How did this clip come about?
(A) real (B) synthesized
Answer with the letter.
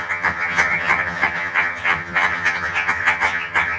B